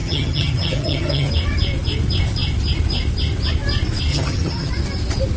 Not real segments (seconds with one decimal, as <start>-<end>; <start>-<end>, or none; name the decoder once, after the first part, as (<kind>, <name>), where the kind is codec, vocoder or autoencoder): 0.0-1.3 (vocoder, HiFi-GAN); 4.1-4.7